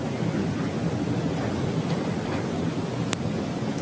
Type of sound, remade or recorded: recorded